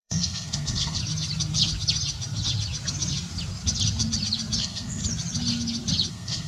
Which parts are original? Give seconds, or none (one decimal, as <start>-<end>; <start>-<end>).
1.0-4.6; 5.0-6.1